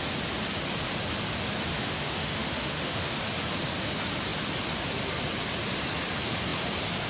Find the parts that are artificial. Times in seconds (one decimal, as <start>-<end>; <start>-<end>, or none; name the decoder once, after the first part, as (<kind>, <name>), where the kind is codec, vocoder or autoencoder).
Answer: 1.7-3.1 (autoencoder, DAC-VAE)

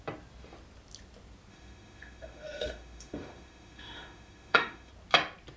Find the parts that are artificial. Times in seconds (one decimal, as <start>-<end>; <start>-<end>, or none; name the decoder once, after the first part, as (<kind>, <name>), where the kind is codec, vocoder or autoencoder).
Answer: 1.5-4.9 (autoencoder, DAC-VAE)

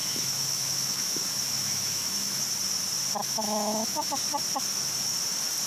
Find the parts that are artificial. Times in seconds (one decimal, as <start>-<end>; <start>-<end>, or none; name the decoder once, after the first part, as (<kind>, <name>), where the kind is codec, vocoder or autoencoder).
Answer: 0.0-2.4 (autoencoder, DAC-VAE); 3.2-4.1

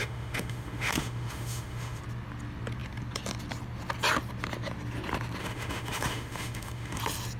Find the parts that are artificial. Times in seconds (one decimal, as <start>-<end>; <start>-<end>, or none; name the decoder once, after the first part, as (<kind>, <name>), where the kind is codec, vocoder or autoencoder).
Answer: 0.0-2.0 (autoencoder, DAC-VAE); 5.4-7.0